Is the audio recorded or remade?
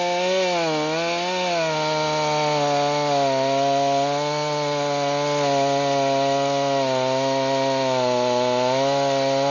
recorded